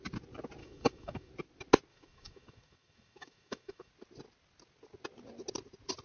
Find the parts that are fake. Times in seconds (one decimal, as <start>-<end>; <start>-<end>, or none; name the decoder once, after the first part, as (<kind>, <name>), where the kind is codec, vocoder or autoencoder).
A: 0.6-1.3 (autoencoder, DAC-VAE); 1.9-3.9